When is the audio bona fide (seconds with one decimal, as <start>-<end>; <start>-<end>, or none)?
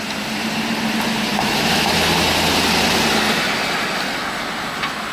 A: 0.0-5.1